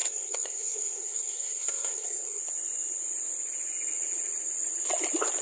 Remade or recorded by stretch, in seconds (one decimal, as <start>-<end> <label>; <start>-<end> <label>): 0.0-2.4 remade; 2.4-5.4 recorded